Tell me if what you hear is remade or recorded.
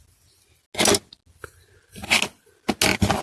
recorded